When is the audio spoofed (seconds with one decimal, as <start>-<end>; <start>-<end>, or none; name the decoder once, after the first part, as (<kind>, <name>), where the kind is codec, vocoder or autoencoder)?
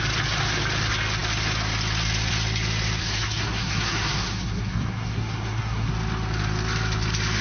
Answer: 3.0-5.9 (codec, SNAC)